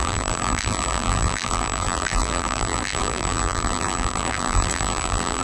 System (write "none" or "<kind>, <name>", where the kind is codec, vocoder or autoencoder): vocoder, BigVGAN v2